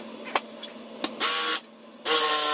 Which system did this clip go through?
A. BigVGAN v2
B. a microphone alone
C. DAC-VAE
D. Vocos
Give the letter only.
B